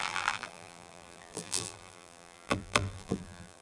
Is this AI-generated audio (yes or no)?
yes